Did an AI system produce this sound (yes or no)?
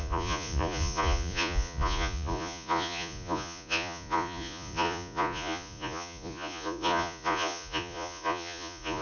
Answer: yes